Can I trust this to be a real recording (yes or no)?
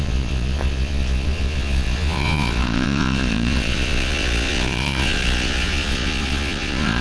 no